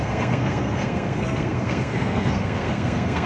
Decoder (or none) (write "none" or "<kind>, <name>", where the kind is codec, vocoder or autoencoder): codec, SNAC